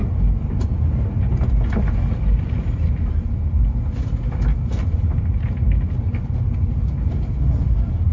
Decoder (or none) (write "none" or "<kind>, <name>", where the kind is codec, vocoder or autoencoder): none